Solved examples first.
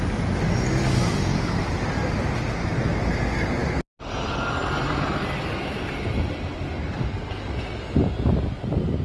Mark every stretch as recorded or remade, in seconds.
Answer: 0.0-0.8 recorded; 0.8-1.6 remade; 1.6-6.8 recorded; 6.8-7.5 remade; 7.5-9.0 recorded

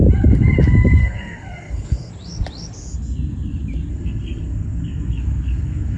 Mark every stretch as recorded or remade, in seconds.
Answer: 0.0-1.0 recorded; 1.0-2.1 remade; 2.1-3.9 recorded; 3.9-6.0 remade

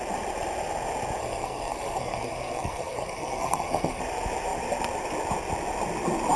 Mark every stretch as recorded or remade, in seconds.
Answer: 0.0-1.2 recorded; 1.2-4.0 remade; 4.0-6.4 recorded

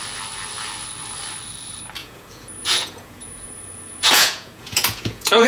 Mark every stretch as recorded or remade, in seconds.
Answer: 0.0-2.0 recorded; 2.0-5.5 remade

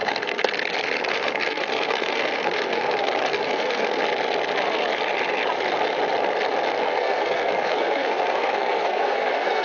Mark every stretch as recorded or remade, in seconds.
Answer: 0.0-0.5 remade; 0.5-1.1 recorded; 1.1-4.0 remade; 4.0-6.8 recorded; 6.8-9.6 remade

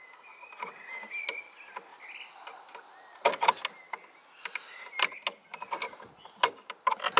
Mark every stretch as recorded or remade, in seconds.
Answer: 0.0-7.2 recorded